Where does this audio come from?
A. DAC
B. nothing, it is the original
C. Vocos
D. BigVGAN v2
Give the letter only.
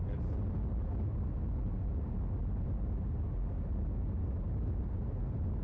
B